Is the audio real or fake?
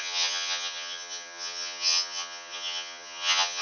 fake